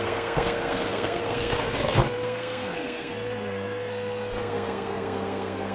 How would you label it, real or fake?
fake